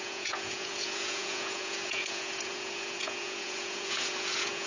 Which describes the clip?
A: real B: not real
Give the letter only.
B